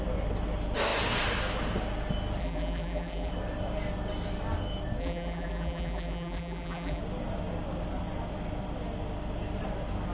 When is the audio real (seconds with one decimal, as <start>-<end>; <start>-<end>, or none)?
0.0-2.4; 3.3-5.0; 7.0-10.1